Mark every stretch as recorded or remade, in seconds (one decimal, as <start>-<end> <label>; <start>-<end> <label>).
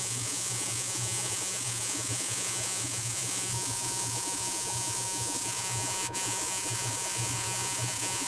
0.0-8.3 remade